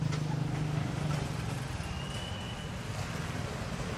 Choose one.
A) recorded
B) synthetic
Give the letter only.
A